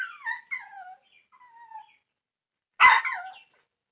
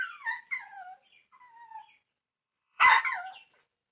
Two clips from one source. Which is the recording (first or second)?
first